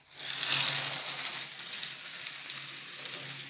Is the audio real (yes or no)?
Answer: yes